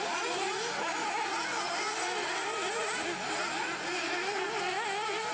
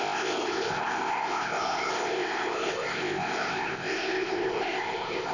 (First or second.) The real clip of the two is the first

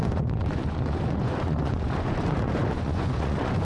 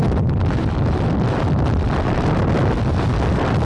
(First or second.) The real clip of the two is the second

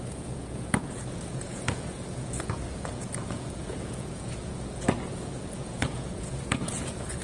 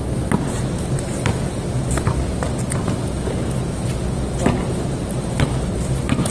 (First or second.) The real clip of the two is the second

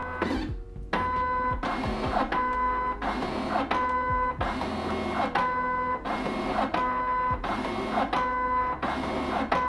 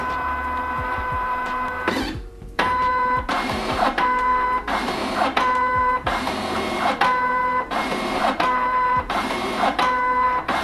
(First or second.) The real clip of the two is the first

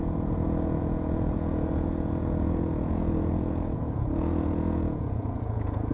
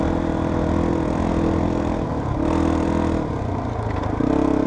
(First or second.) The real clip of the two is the second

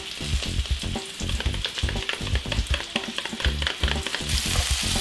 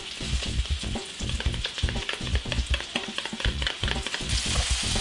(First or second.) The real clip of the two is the first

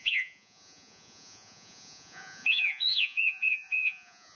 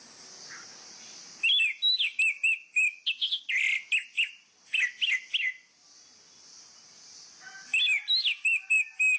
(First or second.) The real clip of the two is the second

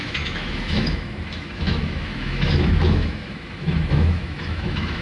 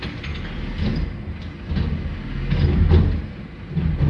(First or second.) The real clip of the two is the second